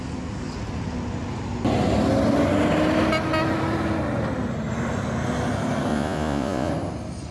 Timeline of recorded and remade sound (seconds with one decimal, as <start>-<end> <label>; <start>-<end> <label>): 0.0-5.9 recorded; 5.9-6.7 remade; 6.7-7.3 recorded